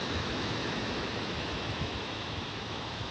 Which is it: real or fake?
fake